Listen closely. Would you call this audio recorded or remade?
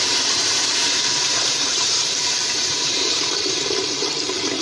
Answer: remade